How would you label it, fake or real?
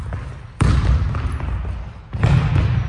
real